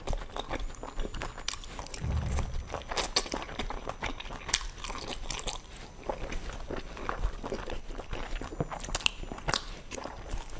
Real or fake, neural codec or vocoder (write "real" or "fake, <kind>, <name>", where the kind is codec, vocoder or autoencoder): real